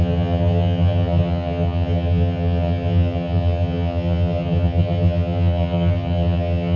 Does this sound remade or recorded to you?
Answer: remade